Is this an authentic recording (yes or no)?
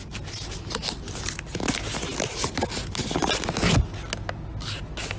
yes